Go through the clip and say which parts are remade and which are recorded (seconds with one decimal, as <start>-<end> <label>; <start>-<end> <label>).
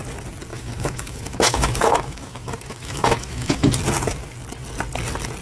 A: 0.0-0.5 recorded; 0.5-3.7 remade; 3.7-5.4 recorded